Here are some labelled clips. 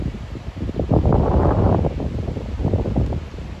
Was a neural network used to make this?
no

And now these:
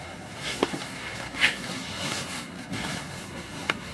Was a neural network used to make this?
yes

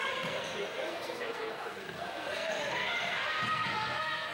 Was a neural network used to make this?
yes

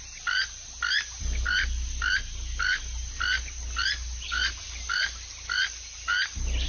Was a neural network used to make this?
no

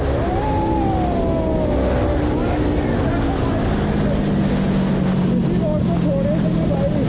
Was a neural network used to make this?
no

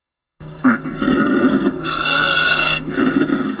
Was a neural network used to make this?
yes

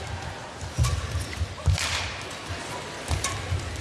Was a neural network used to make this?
no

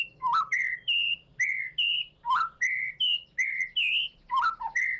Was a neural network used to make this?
no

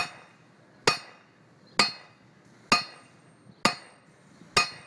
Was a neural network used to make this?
no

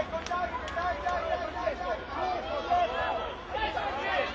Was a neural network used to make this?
no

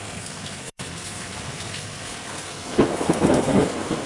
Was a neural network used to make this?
yes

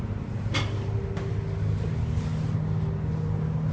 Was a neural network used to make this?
no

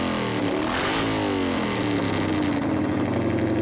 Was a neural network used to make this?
no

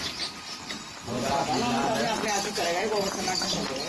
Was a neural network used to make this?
no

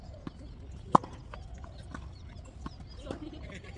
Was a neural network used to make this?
no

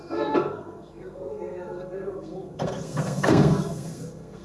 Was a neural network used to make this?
yes